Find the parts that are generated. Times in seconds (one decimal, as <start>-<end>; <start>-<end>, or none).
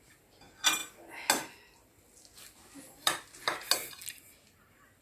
none